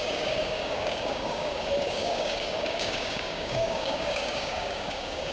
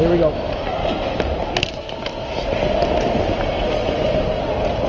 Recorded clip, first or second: second